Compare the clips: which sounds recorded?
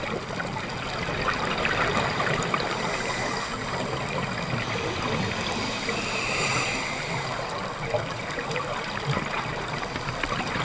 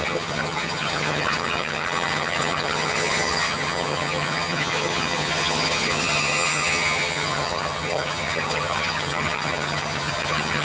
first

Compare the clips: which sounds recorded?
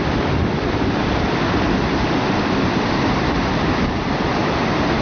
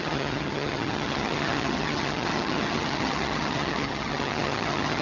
first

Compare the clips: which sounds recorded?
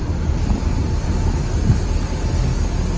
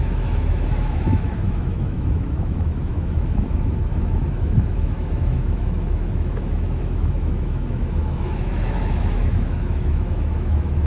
first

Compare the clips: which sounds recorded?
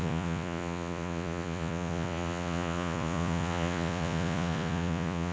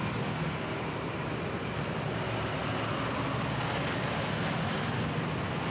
second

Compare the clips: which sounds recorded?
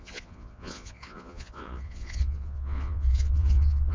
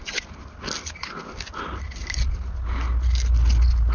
second